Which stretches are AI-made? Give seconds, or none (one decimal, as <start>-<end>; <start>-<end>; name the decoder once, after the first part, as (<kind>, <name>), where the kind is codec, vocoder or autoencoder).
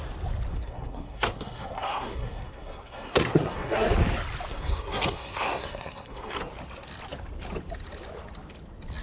0.5-3.9 (codec, SNAC); 4.5-6.5